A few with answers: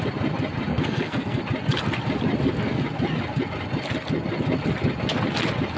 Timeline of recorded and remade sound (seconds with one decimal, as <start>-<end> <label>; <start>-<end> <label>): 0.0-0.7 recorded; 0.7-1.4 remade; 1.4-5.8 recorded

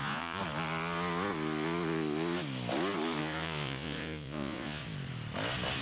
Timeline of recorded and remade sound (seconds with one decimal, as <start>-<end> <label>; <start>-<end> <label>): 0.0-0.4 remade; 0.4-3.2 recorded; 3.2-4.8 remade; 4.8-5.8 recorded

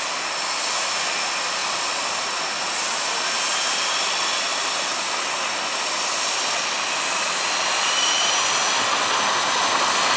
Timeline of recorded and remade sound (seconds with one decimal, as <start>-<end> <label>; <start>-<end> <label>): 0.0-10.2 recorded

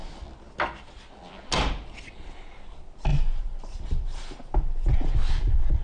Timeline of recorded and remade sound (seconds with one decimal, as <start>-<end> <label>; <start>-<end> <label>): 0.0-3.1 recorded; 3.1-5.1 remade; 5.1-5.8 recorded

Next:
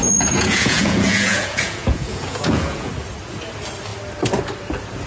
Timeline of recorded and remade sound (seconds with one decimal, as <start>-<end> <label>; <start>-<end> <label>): 0.0-2.9 remade; 2.9-5.1 recorded

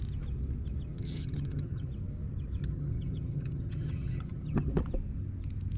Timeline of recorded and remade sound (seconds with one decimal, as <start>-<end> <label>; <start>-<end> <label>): 0.0-0.9 recorded; 0.9-1.9 remade; 1.9-2.6 recorded; 2.6-4.7 remade; 4.7-5.8 recorded

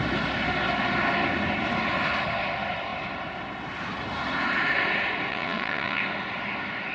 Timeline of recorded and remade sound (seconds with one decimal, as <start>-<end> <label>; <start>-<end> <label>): 0.0-5.3 recorded; 5.3-6.0 remade; 6.0-6.9 recorded